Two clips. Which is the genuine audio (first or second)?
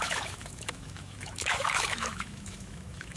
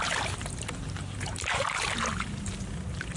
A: second